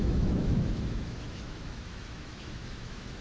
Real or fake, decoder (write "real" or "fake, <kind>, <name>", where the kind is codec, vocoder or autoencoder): fake, autoencoder, DAC-VAE